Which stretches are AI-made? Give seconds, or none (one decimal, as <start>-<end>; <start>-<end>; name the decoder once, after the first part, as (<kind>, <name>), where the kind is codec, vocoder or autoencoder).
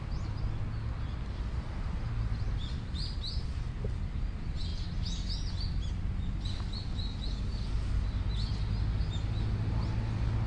none